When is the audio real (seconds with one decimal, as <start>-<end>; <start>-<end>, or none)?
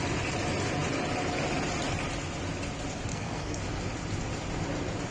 0.0-3.1; 3.6-5.1